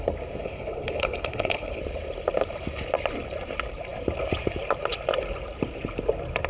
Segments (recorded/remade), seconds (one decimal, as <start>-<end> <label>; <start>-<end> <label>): 0.0-0.4 recorded; 0.4-1.8 remade; 1.8-6.5 recorded